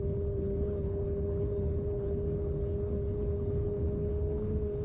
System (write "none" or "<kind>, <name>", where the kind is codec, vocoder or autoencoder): codec, HILCodec